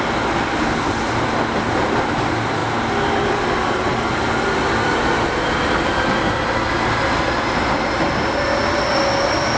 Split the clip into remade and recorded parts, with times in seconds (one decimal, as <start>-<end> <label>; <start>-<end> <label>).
0.0-9.6 recorded